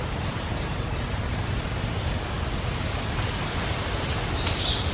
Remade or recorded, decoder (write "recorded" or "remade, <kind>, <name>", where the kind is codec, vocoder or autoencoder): recorded